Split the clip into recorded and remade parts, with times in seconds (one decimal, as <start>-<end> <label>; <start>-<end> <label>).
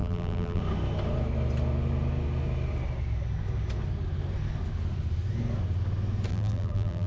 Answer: 0.0-0.6 remade; 0.6-6.3 recorded; 6.3-7.1 remade